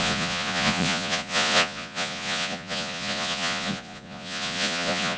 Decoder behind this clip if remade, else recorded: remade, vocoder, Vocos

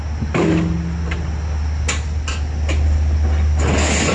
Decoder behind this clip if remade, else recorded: recorded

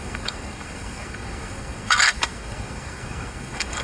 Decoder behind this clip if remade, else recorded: remade, codec, SNAC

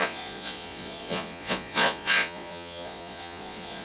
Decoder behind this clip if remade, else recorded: remade, vocoder, Vocos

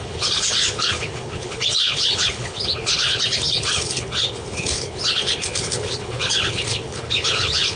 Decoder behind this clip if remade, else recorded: remade, codec, HILCodec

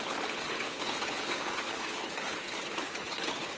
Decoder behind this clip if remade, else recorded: remade, codec, HILCodec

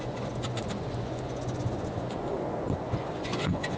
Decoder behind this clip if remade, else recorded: remade, vocoder, Vocos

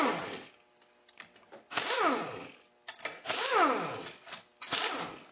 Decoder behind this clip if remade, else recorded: recorded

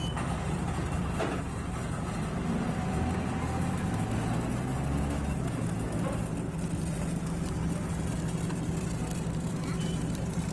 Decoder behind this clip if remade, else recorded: recorded